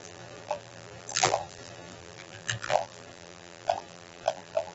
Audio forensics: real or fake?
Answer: fake